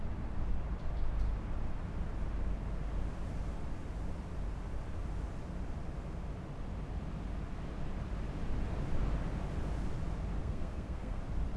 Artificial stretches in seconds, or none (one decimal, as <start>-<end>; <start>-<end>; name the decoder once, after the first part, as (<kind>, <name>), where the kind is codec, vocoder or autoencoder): 10.4-11.2 (codec, SNAC)